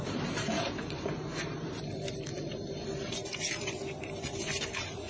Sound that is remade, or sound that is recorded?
remade